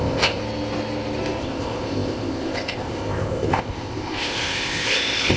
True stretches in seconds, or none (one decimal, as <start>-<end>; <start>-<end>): 0.4-1.4